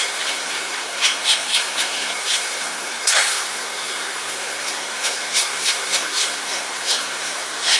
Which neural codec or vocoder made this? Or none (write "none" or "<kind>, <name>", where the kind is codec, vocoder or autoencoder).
codec, SNAC